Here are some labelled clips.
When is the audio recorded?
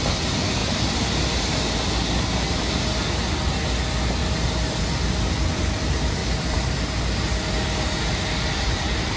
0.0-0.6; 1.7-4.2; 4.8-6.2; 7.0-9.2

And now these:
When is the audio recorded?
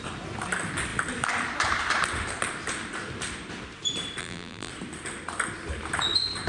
0.0-4.2; 4.7-6.5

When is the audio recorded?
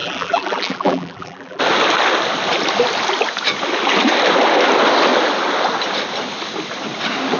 1.6-7.4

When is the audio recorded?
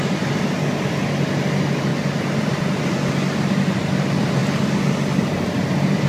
0.0-6.1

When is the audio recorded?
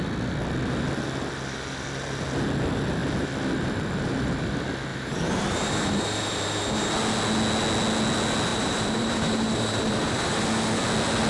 0.0-4.9; 6.9-8.5; 10.3-11.3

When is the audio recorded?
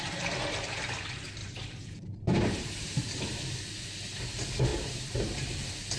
0.0-1.4; 3.2-4.7; 5.6-6.0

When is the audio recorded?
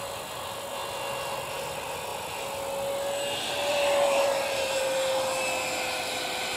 0.0-3.7; 4.8-6.6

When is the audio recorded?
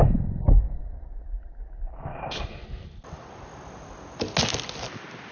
0.0-2.1; 2.6-5.3